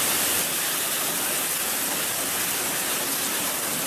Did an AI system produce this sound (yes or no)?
no